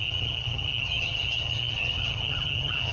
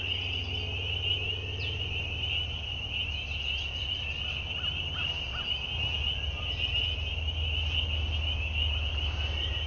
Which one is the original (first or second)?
second